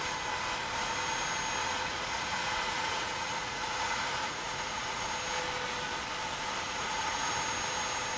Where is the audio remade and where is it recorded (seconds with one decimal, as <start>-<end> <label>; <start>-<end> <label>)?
0.0-1.6 recorded; 1.6-5.1 remade; 5.1-6.6 recorded; 6.6-7.3 remade; 7.3-8.2 recorded

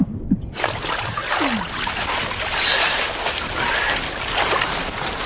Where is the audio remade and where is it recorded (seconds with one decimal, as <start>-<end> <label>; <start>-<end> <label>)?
0.0-5.3 recorded

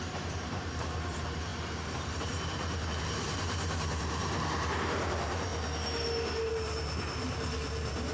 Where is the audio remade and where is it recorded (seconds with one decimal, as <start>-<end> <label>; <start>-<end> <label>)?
0.0-5.5 remade; 5.5-6.5 recorded; 6.5-8.1 remade

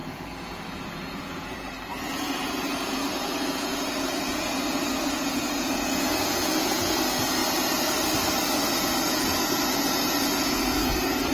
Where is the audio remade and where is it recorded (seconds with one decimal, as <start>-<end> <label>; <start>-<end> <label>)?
0.0-7.4 remade; 7.4-8.8 recorded; 8.8-11.3 remade

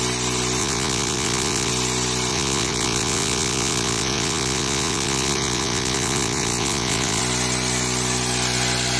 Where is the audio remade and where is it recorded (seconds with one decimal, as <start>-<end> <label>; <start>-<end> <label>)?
0.0-0.6 recorded; 0.6-1.7 remade; 1.7-2.3 recorded; 2.3-7.2 remade; 7.2-9.0 recorded

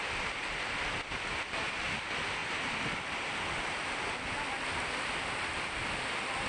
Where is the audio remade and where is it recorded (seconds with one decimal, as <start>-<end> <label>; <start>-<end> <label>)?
0.0-6.5 recorded

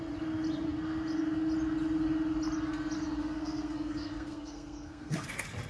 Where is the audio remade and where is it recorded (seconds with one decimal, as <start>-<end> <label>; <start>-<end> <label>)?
0.0-3.2 recorded; 3.2-5.3 remade; 5.3-5.7 recorded

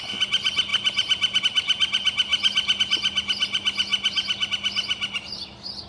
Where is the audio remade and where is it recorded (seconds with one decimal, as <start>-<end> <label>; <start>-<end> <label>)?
0.0-5.9 recorded